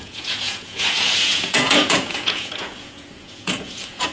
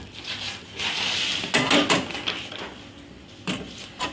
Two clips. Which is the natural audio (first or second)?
second